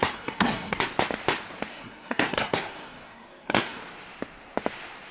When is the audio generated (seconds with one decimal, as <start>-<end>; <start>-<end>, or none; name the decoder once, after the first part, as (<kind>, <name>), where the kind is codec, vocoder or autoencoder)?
0.0-0.8 (codec, SNAC); 1.7-3.8